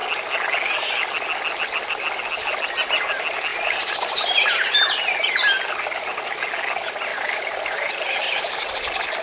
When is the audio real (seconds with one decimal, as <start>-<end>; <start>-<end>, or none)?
0.0-3.5; 4.5-7.1; 8.7-9.2